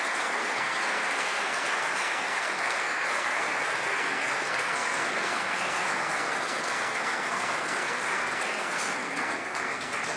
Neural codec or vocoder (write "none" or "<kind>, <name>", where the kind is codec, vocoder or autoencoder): codec, SNAC